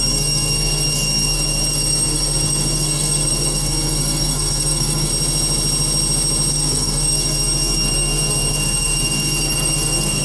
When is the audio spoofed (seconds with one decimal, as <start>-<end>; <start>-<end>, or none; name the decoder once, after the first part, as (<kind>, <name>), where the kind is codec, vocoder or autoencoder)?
0.0-5.1 (codec, SNAC); 6.5-10.2